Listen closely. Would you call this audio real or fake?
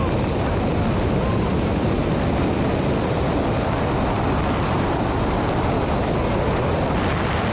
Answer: real